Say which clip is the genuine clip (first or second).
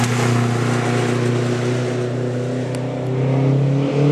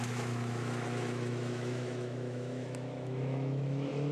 first